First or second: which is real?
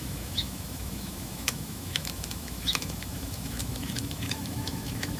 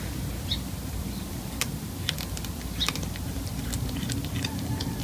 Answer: second